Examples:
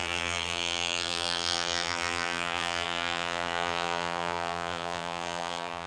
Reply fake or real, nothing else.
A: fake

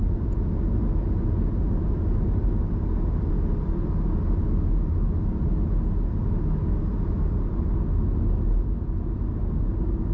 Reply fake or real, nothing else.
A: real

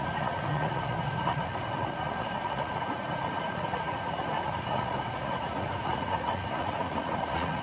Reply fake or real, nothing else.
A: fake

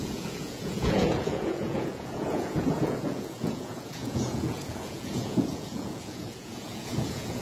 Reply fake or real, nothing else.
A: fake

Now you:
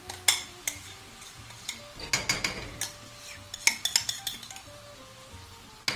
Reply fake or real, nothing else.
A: real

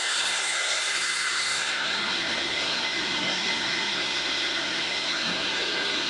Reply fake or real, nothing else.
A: fake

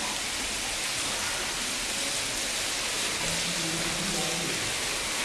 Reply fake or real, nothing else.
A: real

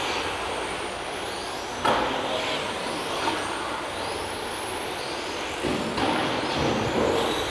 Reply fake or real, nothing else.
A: real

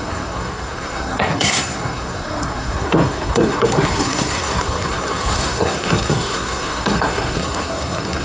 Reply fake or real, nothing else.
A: fake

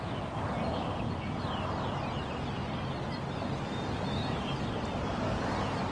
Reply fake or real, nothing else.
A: real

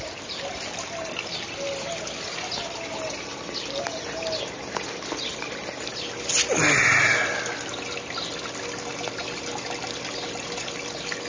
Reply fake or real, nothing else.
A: real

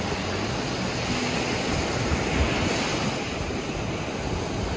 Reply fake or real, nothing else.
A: real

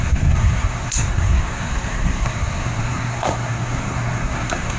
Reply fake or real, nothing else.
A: fake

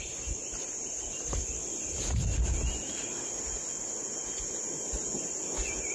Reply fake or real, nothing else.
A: real